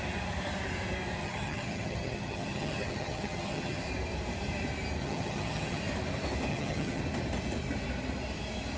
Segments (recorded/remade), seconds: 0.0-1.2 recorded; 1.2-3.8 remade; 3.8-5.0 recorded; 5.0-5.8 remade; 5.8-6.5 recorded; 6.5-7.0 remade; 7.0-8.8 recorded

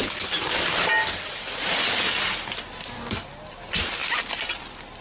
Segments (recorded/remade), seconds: 0.0-5.0 recorded